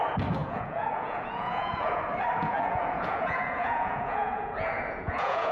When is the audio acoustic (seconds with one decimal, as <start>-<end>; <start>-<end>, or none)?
0.0-0.4; 2.0-2.4